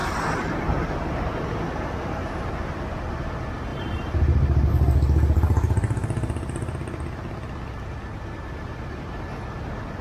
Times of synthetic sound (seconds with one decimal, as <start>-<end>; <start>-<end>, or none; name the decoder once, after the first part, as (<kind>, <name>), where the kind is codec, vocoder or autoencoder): 0.0-2.8 (vocoder, BigVGAN v2); 3.7-4.7